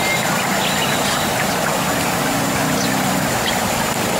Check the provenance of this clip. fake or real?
real